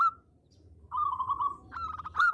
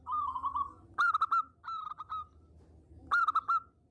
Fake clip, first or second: first